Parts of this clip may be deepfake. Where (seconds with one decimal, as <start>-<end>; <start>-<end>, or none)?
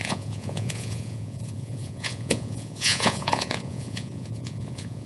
0.0-5.1